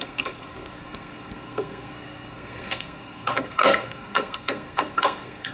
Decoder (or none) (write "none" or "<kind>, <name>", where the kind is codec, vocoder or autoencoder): codec, SNAC